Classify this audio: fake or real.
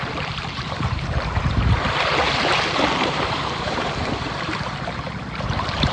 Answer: fake